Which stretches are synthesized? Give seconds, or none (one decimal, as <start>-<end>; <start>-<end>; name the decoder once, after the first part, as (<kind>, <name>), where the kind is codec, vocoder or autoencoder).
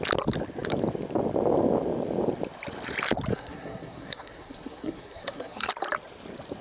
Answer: 3.3-5.7 (codec, SNAC)